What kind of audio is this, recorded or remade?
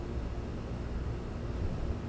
recorded